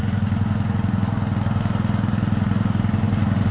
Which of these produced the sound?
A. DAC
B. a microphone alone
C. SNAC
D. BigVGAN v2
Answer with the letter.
B